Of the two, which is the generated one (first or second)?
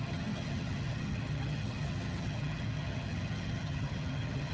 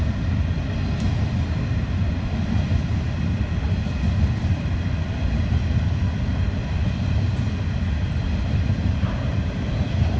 first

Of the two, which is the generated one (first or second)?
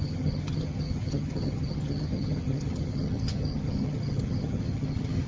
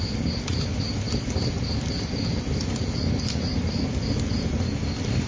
first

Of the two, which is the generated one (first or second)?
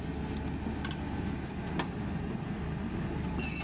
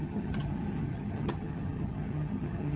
second